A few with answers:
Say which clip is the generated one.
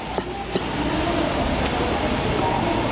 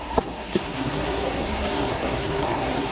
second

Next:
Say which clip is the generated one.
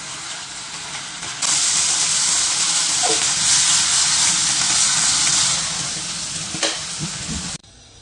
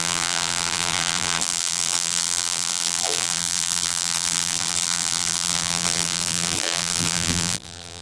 second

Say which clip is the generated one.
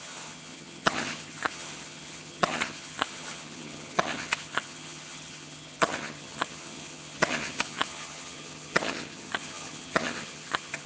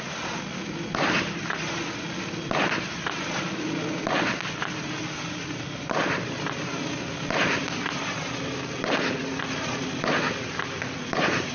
first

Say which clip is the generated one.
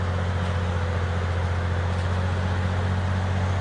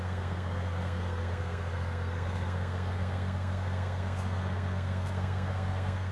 second